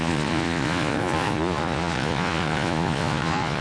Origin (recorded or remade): remade